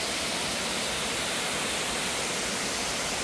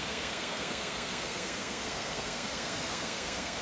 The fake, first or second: second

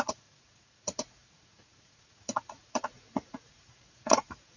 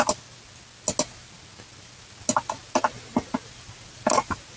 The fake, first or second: first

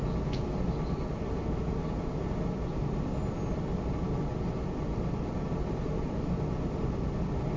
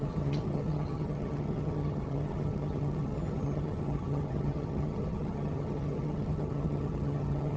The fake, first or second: second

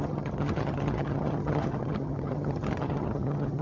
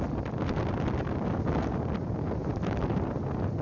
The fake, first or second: first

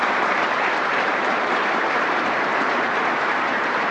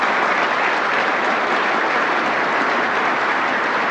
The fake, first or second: first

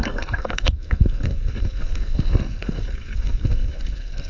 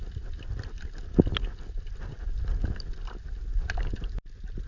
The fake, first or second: first